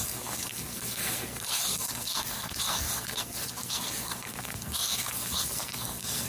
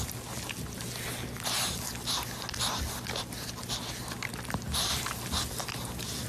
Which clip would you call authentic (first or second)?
second